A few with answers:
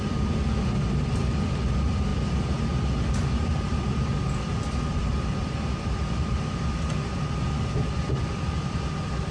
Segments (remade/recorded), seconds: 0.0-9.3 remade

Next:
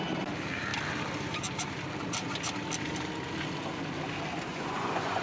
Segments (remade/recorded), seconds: 0.0-4.5 recorded; 4.5-5.2 remade

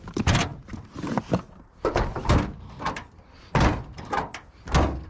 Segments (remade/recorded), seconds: 0.0-5.1 recorded

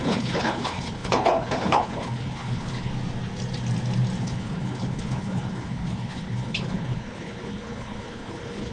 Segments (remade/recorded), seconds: 0.0-2.9 remade; 2.9-4.2 recorded; 4.2-8.7 remade